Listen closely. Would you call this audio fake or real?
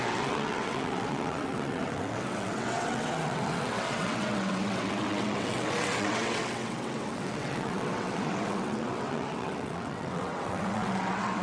fake